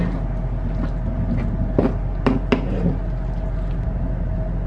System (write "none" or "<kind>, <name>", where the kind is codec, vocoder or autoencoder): none